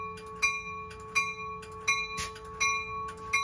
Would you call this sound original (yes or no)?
yes